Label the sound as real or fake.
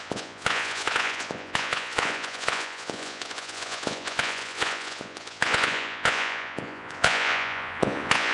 fake